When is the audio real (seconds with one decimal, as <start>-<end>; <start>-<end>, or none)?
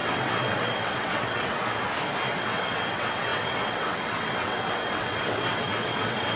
1.6-2.3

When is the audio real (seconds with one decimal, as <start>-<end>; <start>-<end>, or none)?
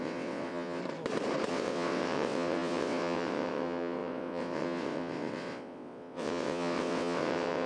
0.8-1.5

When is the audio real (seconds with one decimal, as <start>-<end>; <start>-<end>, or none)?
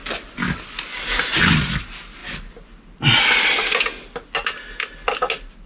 1.2-5.7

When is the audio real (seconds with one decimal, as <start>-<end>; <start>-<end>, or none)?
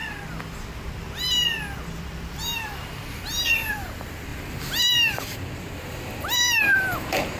0.0-0.9; 4.3-4.9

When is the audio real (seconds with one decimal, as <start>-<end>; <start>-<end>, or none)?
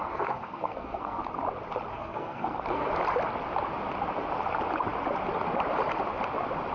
1.2-1.9; 2.9-6.7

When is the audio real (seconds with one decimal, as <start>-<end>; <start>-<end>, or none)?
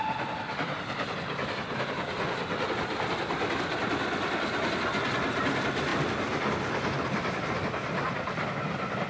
0.0-9.1